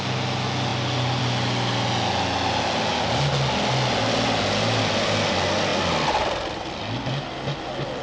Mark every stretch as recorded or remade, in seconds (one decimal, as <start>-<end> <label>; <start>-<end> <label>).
0.0-8.0 recorded